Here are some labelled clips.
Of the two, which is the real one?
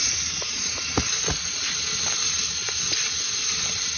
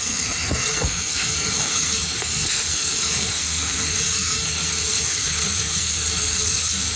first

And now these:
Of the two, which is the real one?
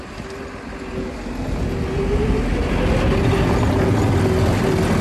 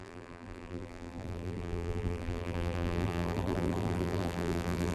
first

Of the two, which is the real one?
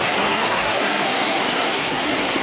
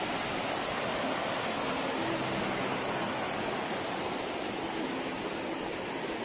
second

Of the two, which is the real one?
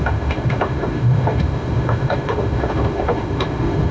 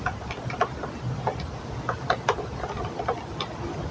second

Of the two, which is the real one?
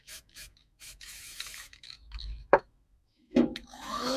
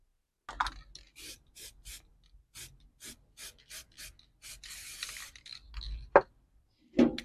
second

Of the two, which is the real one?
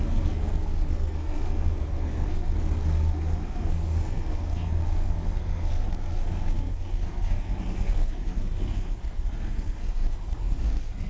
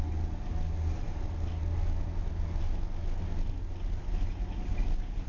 second